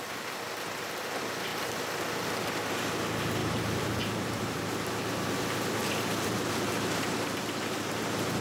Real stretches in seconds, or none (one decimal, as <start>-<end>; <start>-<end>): 0.0-3.4; 5.3-5.8